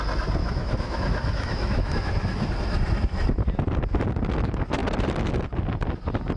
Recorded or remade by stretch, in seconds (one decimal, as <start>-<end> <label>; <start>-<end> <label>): 0.0-0.4 recorded; 0.4-2.5 remade; 2.5-6.4 recorded